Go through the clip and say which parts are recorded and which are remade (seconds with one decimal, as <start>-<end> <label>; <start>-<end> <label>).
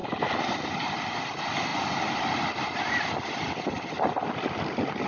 0.0-5.1 recorded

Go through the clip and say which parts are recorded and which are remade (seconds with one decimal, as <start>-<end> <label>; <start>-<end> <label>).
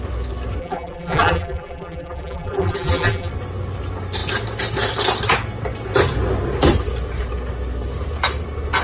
0.0-0.6 recorded; 0.6-3.3 remade; 3.3-8.8 recorded